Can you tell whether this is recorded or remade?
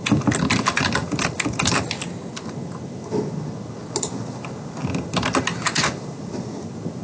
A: recorded